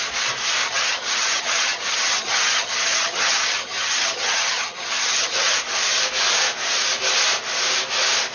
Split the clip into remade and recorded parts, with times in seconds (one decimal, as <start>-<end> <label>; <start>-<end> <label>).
0.0-0.6 recorded; 0.6-5.6 remade; 5.6-8.3 recorded